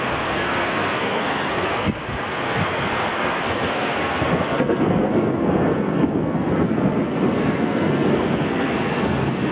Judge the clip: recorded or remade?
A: remade